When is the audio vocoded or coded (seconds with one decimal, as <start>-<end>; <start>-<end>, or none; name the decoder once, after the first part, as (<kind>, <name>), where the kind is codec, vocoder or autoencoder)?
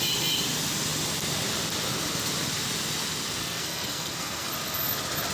3.4-4.5 (codec, SNAC)